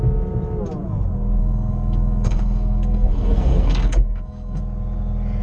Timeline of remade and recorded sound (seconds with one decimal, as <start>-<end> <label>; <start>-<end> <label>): 0.0-1.4 recorded; 1.4-4.6 remade; 4.6-5.4 recorded